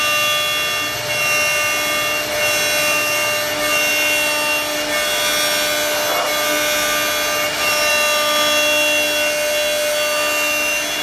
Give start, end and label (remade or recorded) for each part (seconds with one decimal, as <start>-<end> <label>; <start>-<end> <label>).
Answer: 0.0-11.0 recorded